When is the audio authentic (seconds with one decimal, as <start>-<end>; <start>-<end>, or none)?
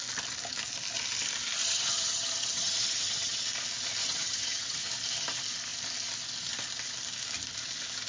0.0-1.6; 3.4-4.0; 4.9-8.1